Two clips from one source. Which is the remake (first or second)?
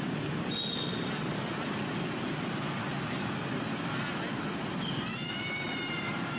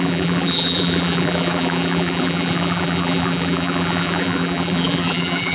second